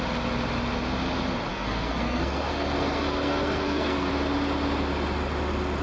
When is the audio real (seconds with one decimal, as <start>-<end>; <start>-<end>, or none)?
0.0-1.5; 4.1-5.8